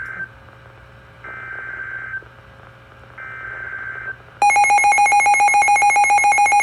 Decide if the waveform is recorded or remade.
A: recorded